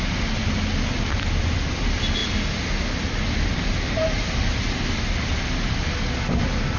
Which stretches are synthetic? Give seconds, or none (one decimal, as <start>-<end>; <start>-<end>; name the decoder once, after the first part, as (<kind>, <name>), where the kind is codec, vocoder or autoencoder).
none